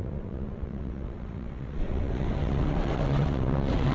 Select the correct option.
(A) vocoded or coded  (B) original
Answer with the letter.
A